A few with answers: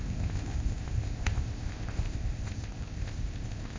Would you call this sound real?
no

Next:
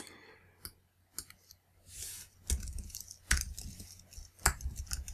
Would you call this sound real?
yes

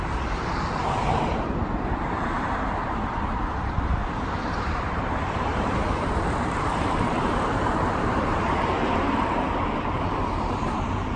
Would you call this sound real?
no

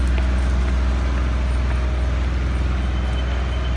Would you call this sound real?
yes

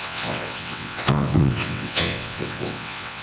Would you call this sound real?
no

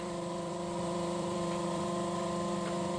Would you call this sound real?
no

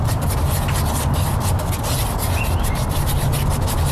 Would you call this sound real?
yes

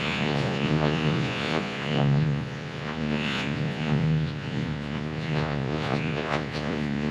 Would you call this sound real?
no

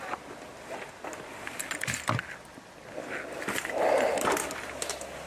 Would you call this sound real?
yes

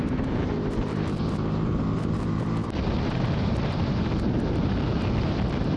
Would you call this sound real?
no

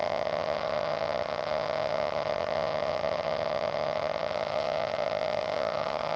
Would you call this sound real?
no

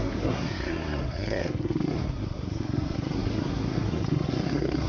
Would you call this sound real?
no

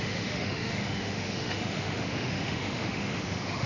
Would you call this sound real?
no